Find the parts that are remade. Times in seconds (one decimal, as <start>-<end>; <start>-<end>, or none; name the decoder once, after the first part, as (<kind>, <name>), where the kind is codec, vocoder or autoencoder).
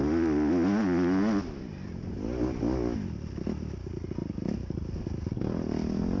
4.2-6.2 (vocoder, BigVGAN v2)